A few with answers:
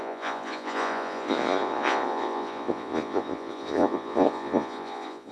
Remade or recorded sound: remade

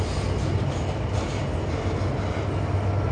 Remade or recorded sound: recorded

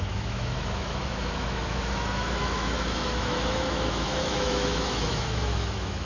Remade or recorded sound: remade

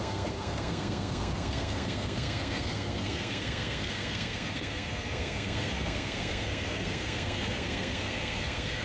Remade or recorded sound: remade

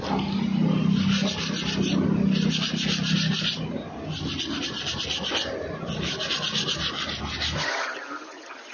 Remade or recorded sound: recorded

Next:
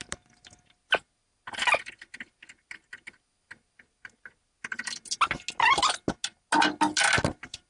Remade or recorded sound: recorded